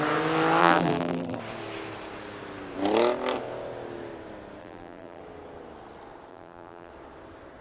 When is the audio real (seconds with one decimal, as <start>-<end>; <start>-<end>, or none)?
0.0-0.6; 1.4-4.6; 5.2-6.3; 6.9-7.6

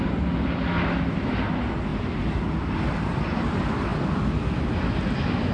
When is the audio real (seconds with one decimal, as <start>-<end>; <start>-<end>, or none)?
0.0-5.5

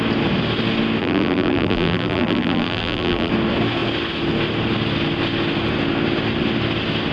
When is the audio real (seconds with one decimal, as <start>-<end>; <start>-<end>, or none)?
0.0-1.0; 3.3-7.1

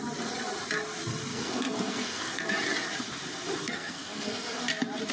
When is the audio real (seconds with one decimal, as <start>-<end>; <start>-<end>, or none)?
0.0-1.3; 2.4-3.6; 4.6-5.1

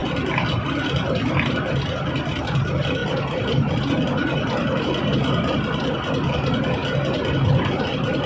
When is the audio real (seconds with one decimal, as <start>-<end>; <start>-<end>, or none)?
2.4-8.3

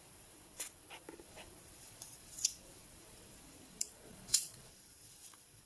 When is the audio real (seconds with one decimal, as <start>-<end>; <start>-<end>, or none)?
none